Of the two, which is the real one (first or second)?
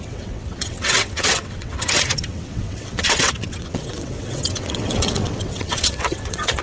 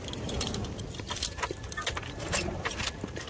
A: second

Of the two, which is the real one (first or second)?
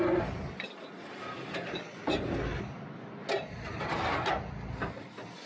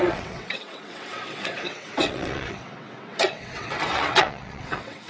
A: first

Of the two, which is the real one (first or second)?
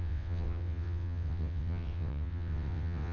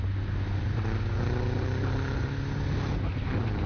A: second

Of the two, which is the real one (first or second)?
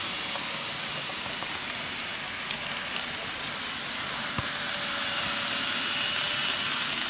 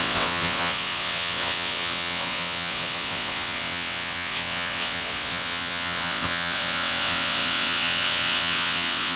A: first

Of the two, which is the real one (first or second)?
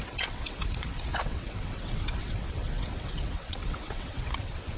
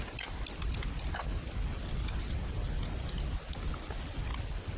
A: second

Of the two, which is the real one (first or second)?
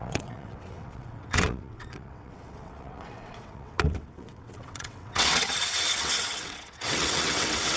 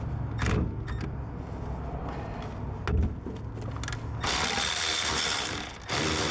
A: second